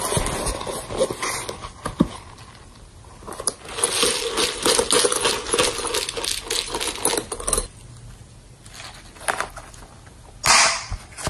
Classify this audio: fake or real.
real